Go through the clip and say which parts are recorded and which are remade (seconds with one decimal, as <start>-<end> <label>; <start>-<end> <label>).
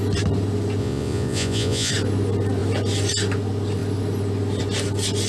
0.0-0.8 recorded; 0.8-1.9 remade; 1.9-5.3 recorded